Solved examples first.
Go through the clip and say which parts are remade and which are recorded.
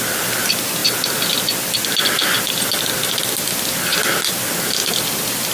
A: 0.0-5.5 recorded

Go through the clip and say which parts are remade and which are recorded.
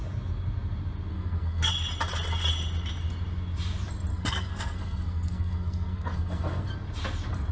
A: 0.0-1.1 recorded; 1.1-1.7 remade; 1.7-4.1 recorded; 4.1-6.7 remade; 6.7-7.5 recorded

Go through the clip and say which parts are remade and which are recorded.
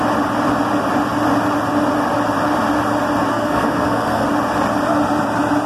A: 0.0-3.3 recorded; 3.3-4.3 remade; 4.3-5.7 recorded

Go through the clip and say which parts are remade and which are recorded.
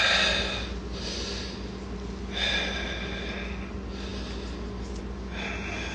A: 0.0-5.9 recorded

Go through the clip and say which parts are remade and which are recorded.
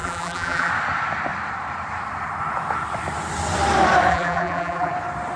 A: 0.0-0.7 remade; 0.7-4.1 recorded; 4.1-4.9 remade; 4.9-5.4 recorded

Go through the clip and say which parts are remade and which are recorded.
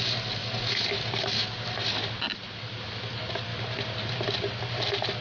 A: 0.0-5.2 recorded